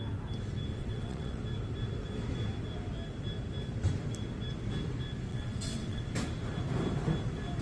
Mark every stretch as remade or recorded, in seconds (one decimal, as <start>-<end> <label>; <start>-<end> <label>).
0.0-0.7 recorded; 0.7-1.4 remade; 1.4-5.3 recorded; 5.3-6.0 remade; 6.0-7.6 recorded